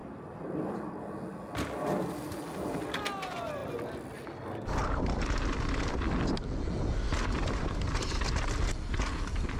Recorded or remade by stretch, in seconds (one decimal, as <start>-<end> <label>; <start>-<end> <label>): 0.0-9.6 recorded